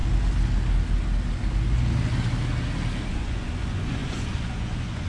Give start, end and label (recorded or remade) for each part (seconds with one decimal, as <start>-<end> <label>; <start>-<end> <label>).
0.0-3.1 recorded; 3.1-5.1 remade